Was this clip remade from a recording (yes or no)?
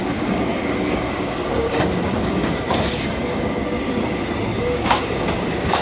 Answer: yes